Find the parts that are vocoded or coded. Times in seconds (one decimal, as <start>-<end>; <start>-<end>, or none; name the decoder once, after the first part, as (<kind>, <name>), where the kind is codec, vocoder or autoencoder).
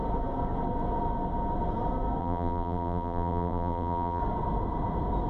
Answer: 2.2-4.2 (vocoder, BigVGAN v2)